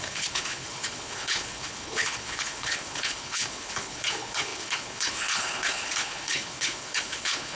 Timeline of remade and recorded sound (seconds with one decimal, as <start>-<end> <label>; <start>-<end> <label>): 0.0-7.5 remade